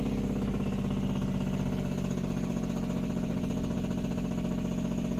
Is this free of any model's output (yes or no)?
yes